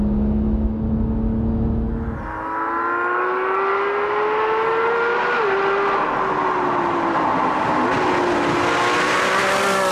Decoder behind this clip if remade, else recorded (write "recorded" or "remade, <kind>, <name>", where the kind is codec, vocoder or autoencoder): recorded